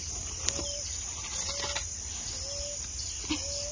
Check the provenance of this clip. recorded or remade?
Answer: recorded